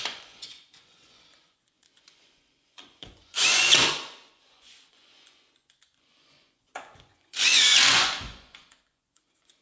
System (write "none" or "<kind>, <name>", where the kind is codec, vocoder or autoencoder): vocoder, Vocos